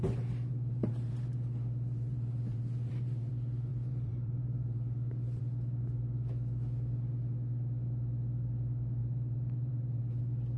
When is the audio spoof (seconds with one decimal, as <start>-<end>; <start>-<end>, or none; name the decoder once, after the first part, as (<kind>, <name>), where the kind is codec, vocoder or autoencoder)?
0.5-3.3 (vocoder, BigVGAN v2); 3.7-5.4; 9.0-10.2

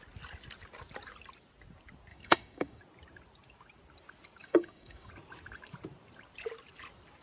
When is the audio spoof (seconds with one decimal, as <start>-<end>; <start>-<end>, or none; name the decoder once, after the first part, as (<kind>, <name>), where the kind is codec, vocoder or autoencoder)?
2.1-2.8 (codec, DAC); 4.4-5.1

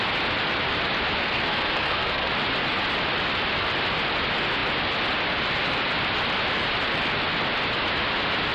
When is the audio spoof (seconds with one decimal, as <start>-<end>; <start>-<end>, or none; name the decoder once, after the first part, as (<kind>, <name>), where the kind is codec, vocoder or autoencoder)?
1.2-2.3 (codec, SNAC)